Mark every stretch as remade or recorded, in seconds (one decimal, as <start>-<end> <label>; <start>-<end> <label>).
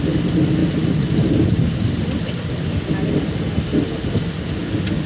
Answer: 0.0-5.1 recorded